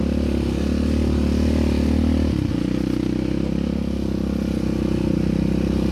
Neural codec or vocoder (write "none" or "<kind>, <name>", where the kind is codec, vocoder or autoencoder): none